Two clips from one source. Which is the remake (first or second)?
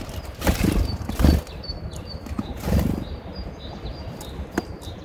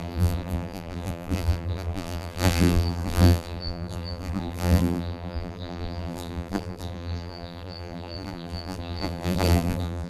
second